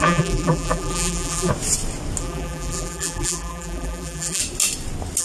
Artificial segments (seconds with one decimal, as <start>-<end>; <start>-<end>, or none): 0.0-1.5; 2.2-4.4